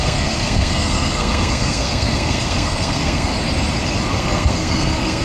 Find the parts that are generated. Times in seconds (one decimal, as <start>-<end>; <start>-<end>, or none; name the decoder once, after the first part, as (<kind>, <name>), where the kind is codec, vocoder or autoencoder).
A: 0.0-3.3 (codec, SNAC); 4.1-5.2